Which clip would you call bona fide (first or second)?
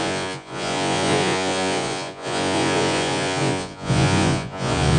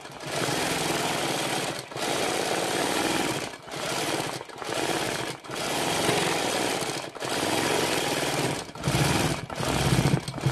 second